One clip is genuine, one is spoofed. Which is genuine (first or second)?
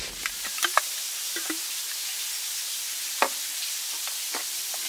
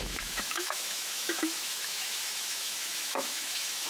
first